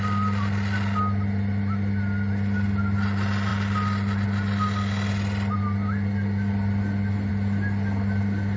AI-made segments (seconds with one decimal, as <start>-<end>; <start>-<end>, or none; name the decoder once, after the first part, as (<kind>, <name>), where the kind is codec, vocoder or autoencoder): none

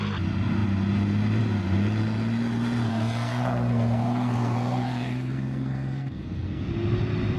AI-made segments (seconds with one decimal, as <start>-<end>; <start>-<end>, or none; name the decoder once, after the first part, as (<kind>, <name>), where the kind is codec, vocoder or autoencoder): 2.9-6.7 (codec, SNAC)

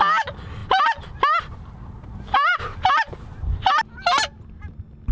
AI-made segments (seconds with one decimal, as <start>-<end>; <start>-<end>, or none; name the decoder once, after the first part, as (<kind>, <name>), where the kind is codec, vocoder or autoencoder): none

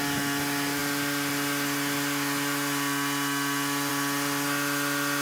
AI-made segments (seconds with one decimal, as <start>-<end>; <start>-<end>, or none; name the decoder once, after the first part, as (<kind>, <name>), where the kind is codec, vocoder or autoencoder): none

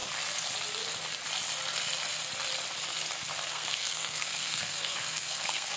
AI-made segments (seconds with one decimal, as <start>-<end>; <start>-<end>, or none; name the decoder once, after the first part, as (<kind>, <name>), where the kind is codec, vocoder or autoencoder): 3.5-5.8 (codec, SNAC)